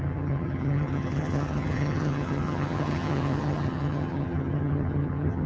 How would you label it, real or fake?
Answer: fake